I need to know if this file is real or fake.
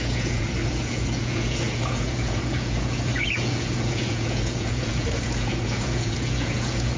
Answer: fake